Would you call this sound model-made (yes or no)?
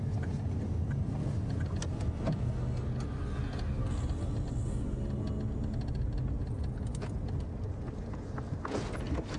no